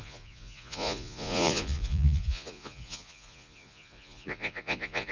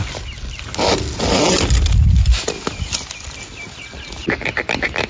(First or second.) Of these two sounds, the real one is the second